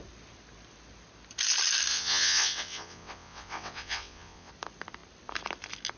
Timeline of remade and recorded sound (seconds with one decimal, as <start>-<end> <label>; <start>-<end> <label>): 0.0-1.9 recorded; 1.9-4.5 remade; 4.5-6.0 recorded